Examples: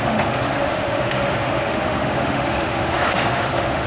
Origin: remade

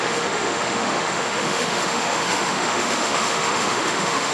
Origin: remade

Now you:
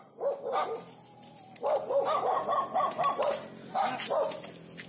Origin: recorded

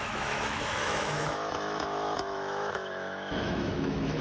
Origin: remade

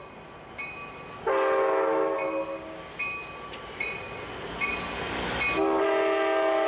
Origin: recorded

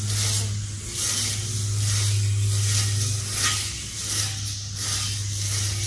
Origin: recorded